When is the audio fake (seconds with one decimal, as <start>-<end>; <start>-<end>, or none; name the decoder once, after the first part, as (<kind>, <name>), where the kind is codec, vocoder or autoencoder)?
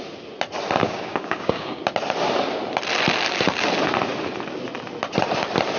0.8-1.8 (codec, DAC)